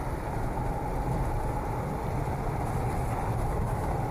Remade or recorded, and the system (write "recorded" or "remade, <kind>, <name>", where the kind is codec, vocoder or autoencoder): recorded